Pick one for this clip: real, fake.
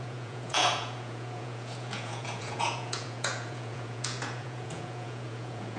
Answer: fake